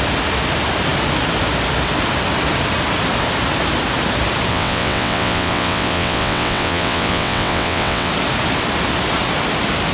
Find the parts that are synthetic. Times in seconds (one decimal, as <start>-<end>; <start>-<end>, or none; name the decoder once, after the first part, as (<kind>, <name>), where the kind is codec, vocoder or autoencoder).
4.5-8.1 (vocoder, WaveNeXt)